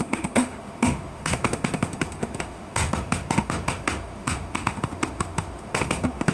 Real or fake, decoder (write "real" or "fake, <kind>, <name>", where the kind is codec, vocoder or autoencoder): fake, autoencoder, DAC-VAE